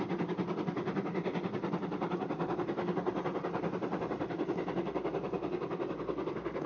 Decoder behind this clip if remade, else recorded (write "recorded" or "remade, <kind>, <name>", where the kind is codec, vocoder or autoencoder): recorded